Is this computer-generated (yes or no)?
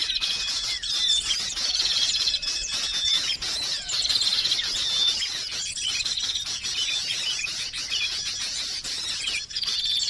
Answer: yes